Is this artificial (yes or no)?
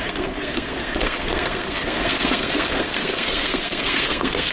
yes